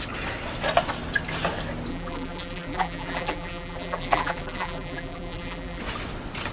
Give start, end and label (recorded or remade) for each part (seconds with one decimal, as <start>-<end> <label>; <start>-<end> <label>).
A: 0.0-1.9 recorded; 1.9-5.8 remade; 5.8-6.5 recorded